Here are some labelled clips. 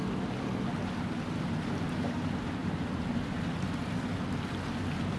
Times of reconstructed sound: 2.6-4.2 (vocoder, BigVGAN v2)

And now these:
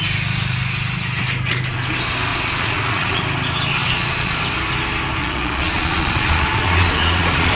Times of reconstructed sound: 2.3-3.2 (vocoder, Vocos); 3.8-4.4; 5.2-7.5

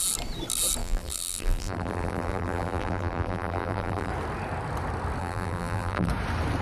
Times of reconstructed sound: 0.8-4.1 (vocoder, BigVGAN v2); 5.2-6.1

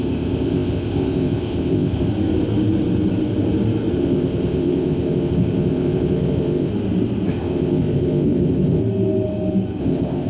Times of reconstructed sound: 0.0-2.1 (codec, ZipCodec); 3.9-6.7; 7.3-8.8; 9.8-10.3

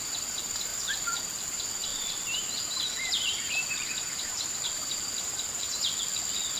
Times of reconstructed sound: 0.7-1.4 (vocoder, BigVGAN v2); 1.9-5.9

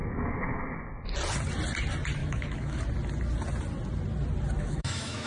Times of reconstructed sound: 0.0-0.6 (autoencoder, DAC-VAE); 2.2-2.8; 4.6-5.3

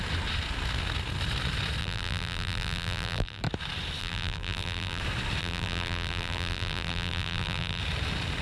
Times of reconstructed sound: 1.8-3.4 (vocoder, BigVGAN v2); 4.0-5.0; 5.4-7.8

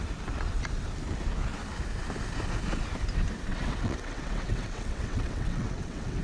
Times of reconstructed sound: 3.5-6.2 (vocoder, WaveNeXt)